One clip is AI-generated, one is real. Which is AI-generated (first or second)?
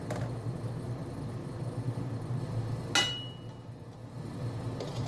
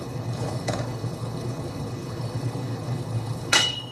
second